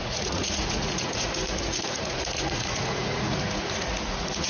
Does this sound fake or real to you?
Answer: fake